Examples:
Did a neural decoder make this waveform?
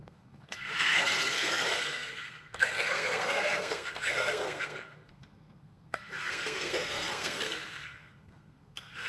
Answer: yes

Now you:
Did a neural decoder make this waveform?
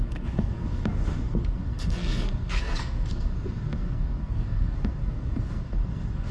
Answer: yes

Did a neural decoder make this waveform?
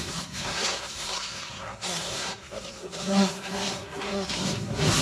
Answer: yes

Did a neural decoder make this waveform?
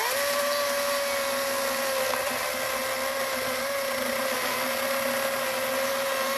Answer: no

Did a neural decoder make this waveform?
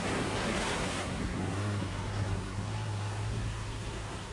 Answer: yes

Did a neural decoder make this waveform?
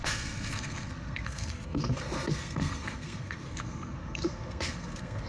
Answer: yes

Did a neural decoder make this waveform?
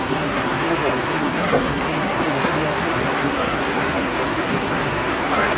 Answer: yes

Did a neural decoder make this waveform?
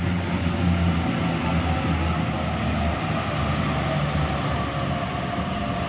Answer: no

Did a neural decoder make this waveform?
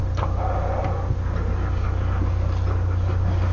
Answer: no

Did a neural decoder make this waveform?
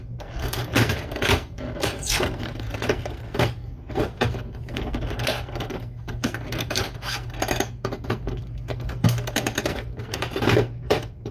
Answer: yes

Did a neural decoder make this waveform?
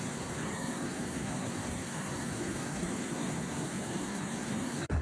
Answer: yes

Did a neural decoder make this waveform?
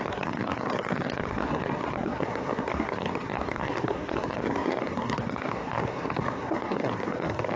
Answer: yes